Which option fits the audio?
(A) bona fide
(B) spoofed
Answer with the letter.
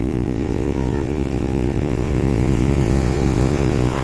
B